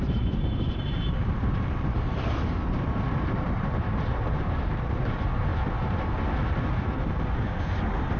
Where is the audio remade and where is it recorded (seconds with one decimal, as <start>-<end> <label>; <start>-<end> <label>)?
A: 0.0-5.5 remade; 5.5-7.0 recorded; 7.0-8.2 remade